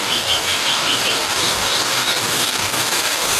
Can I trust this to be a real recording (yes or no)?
no